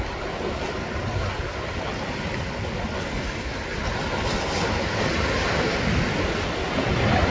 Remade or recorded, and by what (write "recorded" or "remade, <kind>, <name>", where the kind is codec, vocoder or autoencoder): recorded